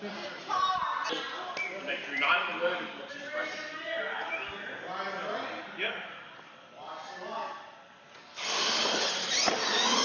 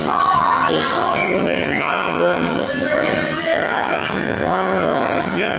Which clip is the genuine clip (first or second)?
first